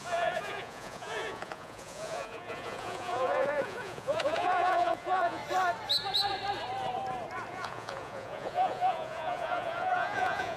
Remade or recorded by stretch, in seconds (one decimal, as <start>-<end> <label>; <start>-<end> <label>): 0.0-5.4 remade; 5.4-7.5 recorded; 7.5-10.6 remade